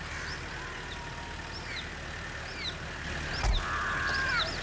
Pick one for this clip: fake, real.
real